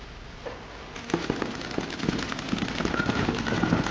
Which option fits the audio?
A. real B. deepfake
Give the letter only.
A